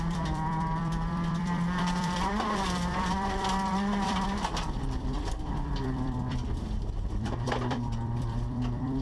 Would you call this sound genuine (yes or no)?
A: no